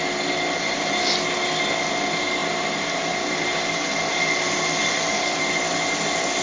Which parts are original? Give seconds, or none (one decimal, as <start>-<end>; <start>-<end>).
0.0-6.4